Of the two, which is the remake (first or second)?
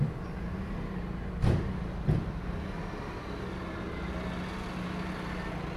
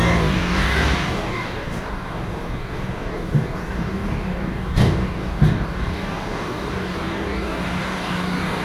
second